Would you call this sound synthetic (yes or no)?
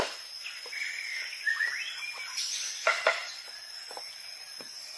no